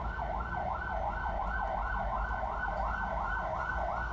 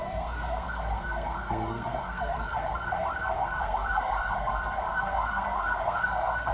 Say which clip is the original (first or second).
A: first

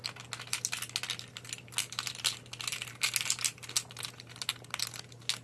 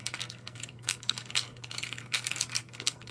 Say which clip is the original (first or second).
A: first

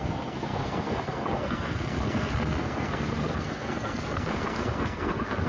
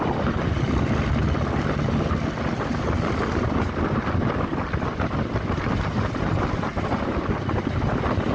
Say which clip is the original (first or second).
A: second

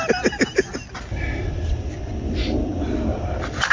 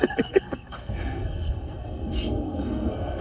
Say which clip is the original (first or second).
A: first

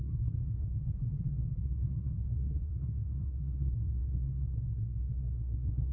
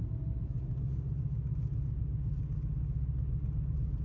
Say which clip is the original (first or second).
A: second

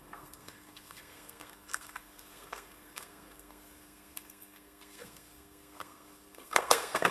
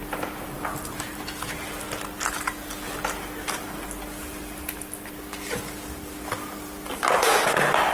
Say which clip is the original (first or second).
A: second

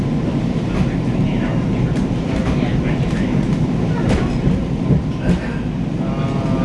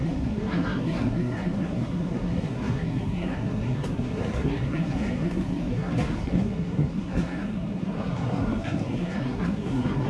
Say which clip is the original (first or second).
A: first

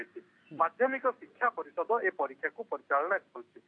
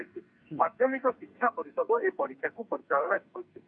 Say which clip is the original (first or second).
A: first